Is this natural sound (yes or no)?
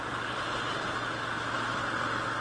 yes